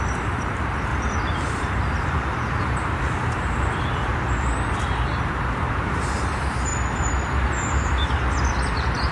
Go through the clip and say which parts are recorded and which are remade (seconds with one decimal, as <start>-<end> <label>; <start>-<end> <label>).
0.0-0.9 remade; 0.9-1.5 recorded; 1.5-4.1 remade; 4.1-5.8 recorded; 5.8-6.7 remade; 6.7-8.5 recorded; 8.5-9.1 remade

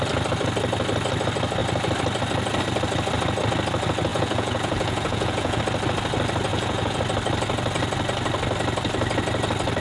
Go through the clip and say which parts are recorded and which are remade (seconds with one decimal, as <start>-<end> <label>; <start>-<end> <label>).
0.0-4.1 recorded; 4.1-5.6 remade; 5.6-6.5 recorded; 6.5-7.0 remade; 7.0-9.8 recorded

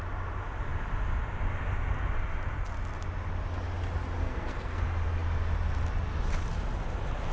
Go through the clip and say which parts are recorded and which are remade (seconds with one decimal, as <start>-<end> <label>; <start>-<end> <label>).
0.0-4.2 recorded; 4.2-4.8 remade; 4.8-7.3 recorded